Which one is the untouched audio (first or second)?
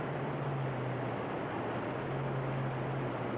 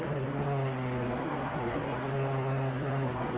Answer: first